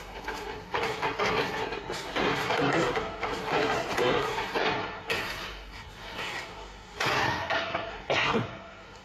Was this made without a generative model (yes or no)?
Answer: no